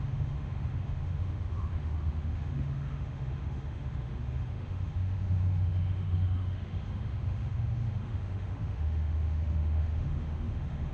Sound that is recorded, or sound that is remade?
remade